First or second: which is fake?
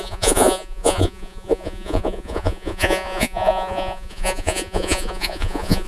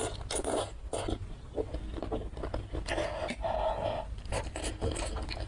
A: first